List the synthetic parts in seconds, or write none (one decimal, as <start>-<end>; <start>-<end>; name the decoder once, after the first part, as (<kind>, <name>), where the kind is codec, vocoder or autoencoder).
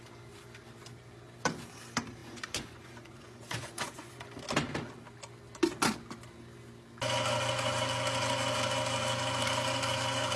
2.2-4.1 (vocoder, Vocos)